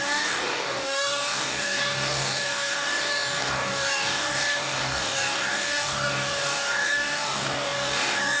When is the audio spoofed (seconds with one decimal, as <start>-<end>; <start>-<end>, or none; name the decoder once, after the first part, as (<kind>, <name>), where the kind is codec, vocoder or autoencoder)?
0.0-8.4 (codec, DAC)

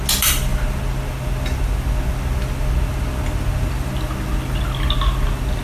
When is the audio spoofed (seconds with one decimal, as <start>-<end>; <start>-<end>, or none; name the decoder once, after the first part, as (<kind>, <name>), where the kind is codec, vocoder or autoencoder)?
none

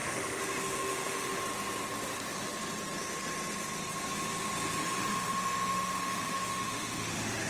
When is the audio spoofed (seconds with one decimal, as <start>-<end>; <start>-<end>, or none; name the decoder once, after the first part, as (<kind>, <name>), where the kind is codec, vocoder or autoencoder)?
0.0-1.4 (autoencoder, DAC-VAE); 4.8-7.5

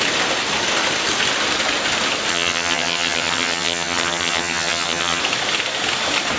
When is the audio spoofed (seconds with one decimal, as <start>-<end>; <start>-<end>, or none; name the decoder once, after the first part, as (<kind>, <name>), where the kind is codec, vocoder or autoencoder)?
2.3-5.2 (vocoder, HiFi-GAN)

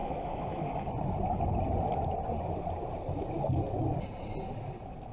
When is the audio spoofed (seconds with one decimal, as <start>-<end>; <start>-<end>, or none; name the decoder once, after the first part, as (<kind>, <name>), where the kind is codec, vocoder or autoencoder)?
0.0-0.7 (autoencoder, DAC-VAE)

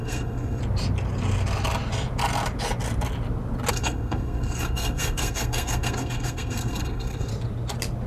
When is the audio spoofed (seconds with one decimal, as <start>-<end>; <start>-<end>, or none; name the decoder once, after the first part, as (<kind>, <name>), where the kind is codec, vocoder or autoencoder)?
0.0-0.6 (codec, SNAC); 3.7-7.3